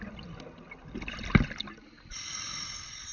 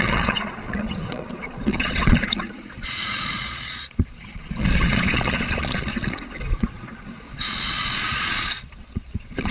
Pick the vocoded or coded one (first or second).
second